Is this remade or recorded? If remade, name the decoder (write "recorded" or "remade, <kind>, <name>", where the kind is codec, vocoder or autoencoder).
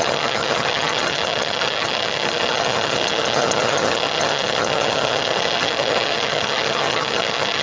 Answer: remade, vocoder, HiFi-GAN